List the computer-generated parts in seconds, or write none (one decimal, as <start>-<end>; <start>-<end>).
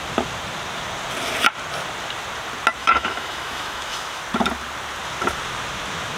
2.8-4.2